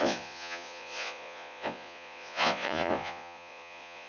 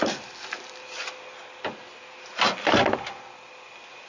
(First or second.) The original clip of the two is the second